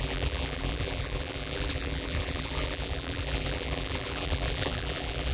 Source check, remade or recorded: remade